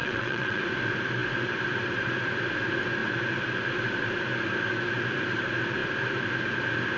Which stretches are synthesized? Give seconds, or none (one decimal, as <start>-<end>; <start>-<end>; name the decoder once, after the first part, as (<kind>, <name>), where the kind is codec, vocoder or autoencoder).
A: 0.0-0.6 (vocoder, WaveNeXt)